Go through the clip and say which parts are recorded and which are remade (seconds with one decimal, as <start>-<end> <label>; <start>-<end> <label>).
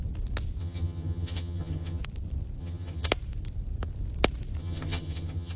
0.0-0.6 recorded; 0.6-2.0 remade; 2.0-2.6 recorded; 2.6-3.1 remade; 3.1-4.6 recorded; 4.6-5.6 remade